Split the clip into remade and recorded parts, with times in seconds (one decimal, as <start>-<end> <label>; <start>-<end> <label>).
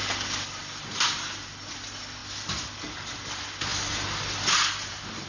0.0-5.3 recorded